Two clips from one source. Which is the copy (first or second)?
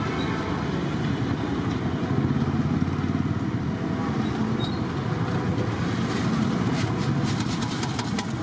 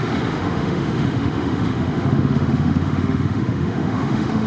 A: second